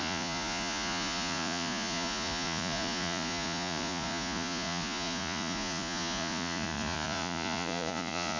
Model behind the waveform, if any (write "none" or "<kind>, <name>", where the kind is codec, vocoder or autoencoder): vocoder, Vocos